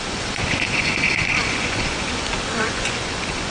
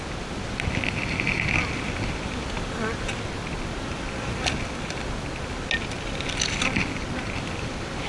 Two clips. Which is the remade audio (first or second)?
first